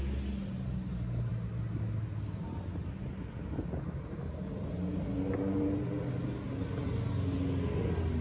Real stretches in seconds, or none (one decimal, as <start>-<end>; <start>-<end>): 0.0-8.2